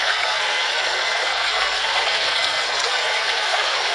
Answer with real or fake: fake